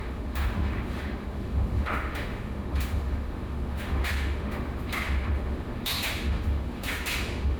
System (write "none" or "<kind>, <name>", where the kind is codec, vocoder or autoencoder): autoencoder, DAC-VAE